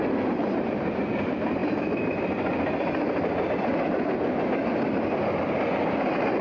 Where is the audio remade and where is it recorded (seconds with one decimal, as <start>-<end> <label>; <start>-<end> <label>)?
0.0-6.4 recorded